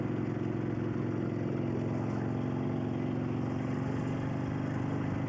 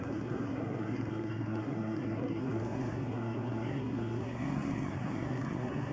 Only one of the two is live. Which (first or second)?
first